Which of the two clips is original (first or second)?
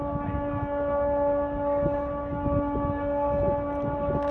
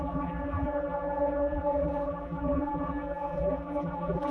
first